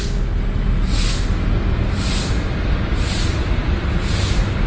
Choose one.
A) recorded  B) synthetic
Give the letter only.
A